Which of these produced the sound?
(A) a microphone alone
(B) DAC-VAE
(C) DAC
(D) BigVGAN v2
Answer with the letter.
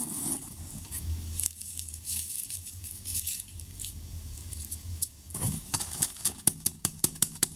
C